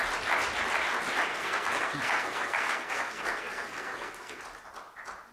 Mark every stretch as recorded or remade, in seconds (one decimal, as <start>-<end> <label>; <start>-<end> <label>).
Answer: 0.0-1.3 recorded; 1.3-4.4 remade; 4.4-5.3 recorded